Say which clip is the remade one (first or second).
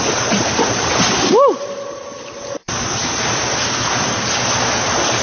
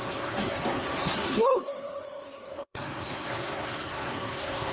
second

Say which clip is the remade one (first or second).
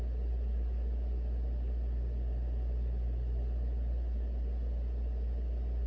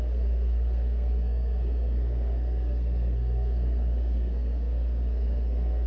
second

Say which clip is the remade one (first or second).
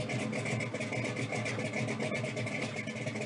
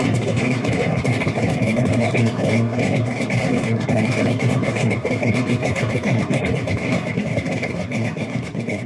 second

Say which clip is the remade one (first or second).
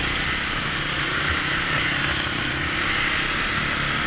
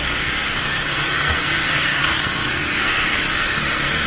second